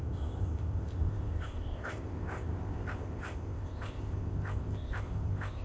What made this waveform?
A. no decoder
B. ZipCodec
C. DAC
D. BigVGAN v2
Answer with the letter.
B